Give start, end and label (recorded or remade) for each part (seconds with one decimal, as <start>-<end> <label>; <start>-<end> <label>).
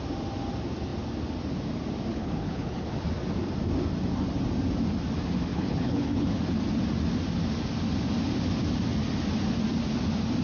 0.0-2.1 recorded; 2.1-2.9 remade; 2.9-5.5 recorded; 5.5-6.4 remade; 6.4-10.4 recorded